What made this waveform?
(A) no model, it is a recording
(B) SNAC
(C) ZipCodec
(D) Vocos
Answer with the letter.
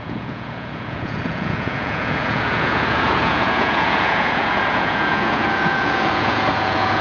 D